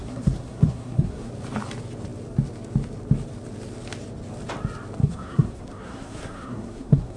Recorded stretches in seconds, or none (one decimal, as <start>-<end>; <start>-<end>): 1.3-5.0